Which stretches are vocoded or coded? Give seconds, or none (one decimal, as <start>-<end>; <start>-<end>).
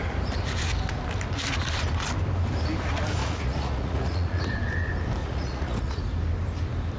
3.2-4.5; 5.2-6.0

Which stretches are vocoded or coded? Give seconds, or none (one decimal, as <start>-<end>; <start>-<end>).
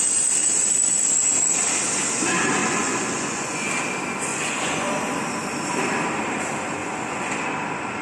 2.6-3.7; 4.3-4.9; 6.8-7.3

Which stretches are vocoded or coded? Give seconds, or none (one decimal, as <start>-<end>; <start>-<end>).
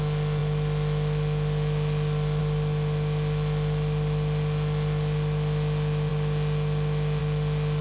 none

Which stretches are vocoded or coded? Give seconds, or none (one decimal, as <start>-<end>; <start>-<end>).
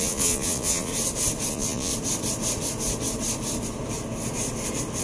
0.0-0.9; 1.5-1.9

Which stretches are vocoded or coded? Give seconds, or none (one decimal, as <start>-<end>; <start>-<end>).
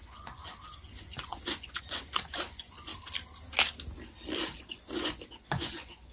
0.0-2.9; 4.6-6.1